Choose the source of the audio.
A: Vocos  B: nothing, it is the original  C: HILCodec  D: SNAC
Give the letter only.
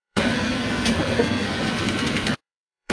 D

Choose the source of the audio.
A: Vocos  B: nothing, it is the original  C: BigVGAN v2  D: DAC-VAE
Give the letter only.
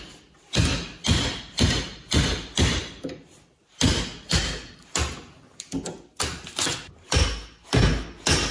B